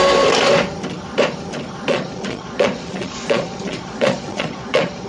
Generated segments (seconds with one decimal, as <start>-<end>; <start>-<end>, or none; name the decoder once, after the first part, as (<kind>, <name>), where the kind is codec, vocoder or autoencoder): 1.9-5.1 (vocoder, Vocos)